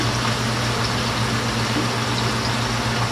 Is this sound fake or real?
real